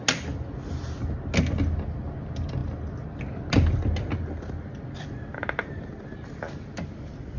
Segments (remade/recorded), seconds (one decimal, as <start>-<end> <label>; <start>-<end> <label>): 0.0-7.4 recorded

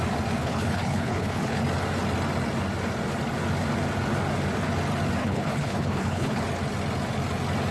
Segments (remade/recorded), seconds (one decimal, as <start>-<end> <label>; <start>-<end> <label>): 0.0-0.4 recorded; 0.4-1.6 remade; 1.6-5.2 recorded; 5.2-6.4 remade; 6.4-7.7 recorded

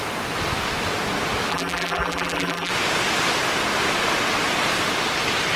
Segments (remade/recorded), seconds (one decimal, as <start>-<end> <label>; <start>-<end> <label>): 0.0-1.5 recorded; 1.5-2.7 remade; 2.7-5.6 recorded

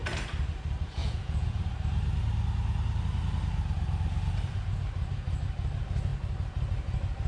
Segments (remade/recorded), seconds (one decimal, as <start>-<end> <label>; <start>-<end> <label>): 0.0-1.0 recorded; 1.0-1.6 remade; 1.6-7.3 recorded